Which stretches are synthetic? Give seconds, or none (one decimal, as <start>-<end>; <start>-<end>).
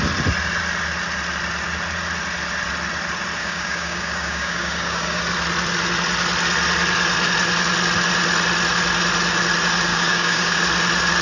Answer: 3.4-5.2; 9.9-10.6